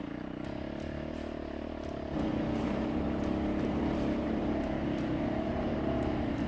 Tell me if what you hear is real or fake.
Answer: real